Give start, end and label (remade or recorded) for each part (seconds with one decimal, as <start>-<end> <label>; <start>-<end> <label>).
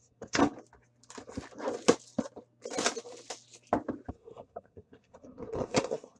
0.0-0.4 remade; 0.4-4.1 recorded; 4.1-6.2 remade